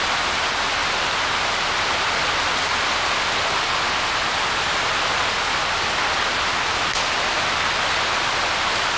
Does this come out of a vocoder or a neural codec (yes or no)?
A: no